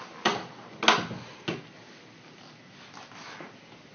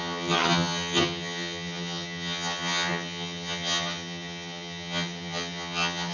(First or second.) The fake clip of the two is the second